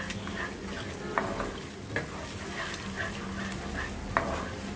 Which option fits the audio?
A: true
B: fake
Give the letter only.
A